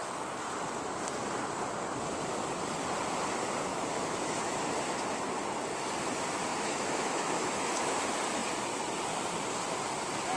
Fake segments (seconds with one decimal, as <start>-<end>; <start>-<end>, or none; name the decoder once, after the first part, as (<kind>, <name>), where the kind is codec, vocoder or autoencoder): 3.7-4.7 (autoencoder, DAC-VAE); 6.5-8.0